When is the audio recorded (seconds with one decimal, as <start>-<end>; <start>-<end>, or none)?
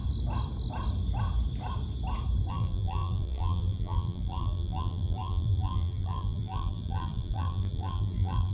0.0-2.5